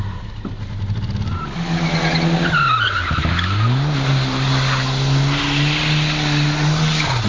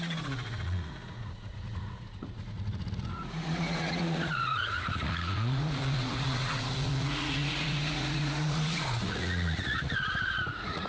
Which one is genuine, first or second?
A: first